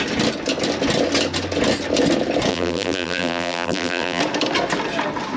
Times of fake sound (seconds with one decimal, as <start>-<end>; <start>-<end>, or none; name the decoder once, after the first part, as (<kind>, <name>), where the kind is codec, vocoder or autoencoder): 2.5-4.2 (vocoder, BigVGAN v2)